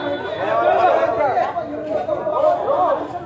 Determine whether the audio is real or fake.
real